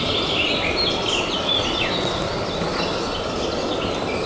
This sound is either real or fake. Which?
real